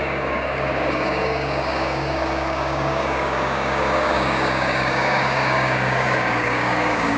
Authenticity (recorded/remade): remade